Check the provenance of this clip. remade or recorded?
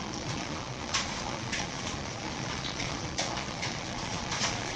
remade